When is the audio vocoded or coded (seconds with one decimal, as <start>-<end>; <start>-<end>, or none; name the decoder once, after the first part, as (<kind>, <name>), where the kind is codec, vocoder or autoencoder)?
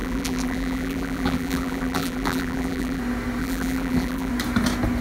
0.0-3.0 (vocoder, BigVGAN v2); 3.4-4.3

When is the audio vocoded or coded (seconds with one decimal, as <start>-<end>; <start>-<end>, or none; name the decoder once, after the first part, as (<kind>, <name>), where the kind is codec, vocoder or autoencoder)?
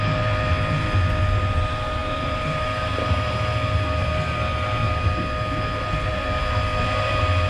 2.0-3.3 (vocoder, BigVGAN v2)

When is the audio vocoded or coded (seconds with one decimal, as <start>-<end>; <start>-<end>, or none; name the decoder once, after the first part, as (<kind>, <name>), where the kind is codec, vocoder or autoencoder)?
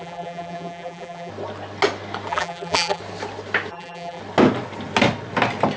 0.0-1.3 (vocoder, BigVGAN v2); 2.3-3.0; 3.7-4.2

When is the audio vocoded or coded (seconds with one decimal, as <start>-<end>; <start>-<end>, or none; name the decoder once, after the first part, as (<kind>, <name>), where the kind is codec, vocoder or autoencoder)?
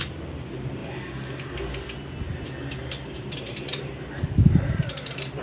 0.0-0.8 (vocoder, BigVGAN v2); 3.1-5.4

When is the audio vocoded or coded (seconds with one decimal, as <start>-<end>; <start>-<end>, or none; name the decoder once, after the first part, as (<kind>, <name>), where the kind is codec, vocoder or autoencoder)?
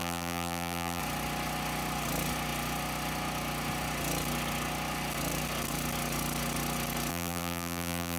0.0-1.0 (vocoder, BigVGAN v2); 7.1-8.2